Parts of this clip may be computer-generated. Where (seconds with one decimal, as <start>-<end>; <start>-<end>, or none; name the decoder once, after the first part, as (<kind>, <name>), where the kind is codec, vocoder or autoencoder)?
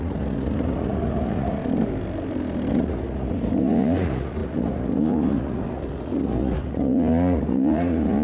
0.0-1.6 (vocoder, Vocos); 2.7-8.2